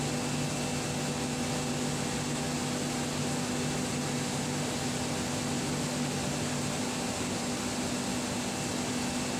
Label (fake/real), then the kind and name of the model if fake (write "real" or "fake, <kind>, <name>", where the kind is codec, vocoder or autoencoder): real